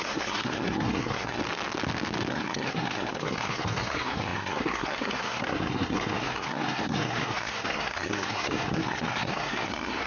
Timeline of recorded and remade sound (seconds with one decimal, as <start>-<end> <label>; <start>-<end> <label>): 0.0-1.4 remade; 1.4-2.3 recorded; 2.3-10.1 remade

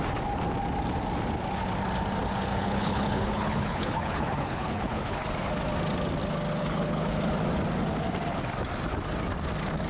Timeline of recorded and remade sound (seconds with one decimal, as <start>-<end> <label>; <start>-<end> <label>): 0.0-2.5 recorded; 2.5-5.3 remade; 5.3-6.6 recorded; 6.6-7.3 remade; 7.3-9.9 recorded

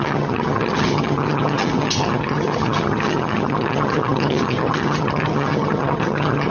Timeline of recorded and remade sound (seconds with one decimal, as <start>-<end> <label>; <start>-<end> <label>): 0.0-6.5 remade

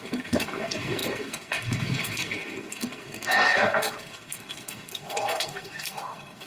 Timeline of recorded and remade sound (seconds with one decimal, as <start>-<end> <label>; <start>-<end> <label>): 0.0-6.5 remade

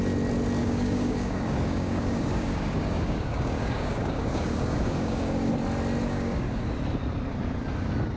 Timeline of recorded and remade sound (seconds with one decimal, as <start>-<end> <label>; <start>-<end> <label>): 0.0-0.6 recorded; 0.6-5.5 remade; 5.5-6.0 recorded; 6.0-6.6 remade; 6.6-8.2 recorded